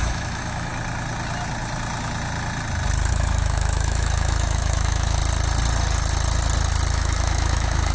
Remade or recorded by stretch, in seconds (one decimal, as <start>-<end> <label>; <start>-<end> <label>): 0.0-0.7 remade; 0.7-3.1 recorded; 3.1-5.2 remade; 5.2-6.9 recorded; 6.9-7.9 remade